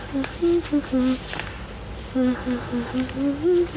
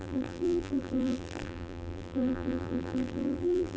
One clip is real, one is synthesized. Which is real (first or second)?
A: first